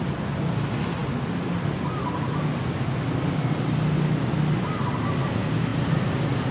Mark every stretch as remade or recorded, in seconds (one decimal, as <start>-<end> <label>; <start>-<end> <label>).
0.0-6.5 recorded